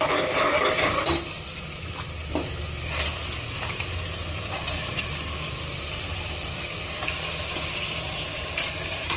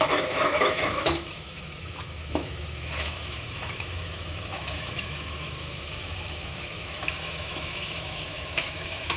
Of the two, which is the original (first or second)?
first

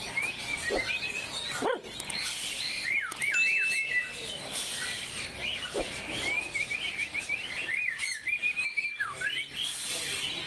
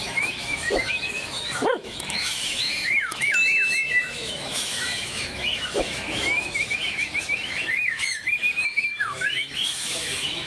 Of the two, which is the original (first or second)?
first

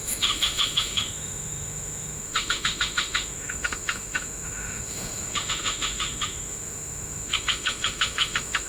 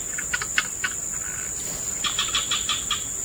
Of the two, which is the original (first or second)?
second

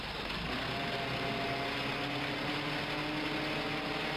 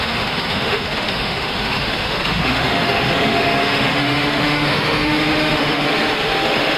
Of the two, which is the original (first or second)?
first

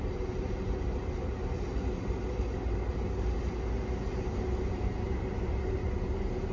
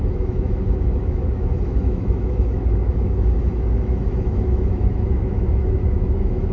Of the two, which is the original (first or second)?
first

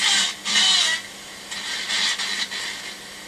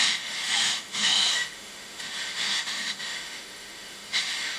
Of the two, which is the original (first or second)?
first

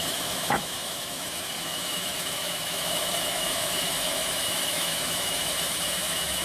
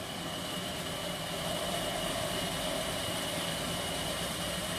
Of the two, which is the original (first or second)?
second